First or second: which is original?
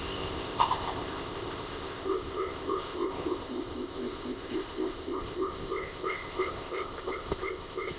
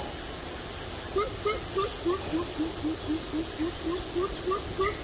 second